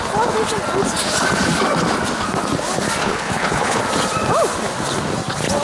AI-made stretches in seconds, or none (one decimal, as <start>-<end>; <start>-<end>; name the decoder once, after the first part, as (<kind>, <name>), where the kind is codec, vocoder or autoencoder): 3.0-3.8 (codec, HILCodec)